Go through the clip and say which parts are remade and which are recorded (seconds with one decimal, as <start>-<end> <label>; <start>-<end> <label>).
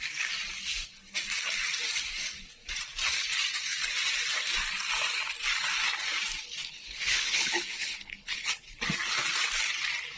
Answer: 0.0-6.7 recorded; 6.7-8.5 remade; 8.5-10.2 recorded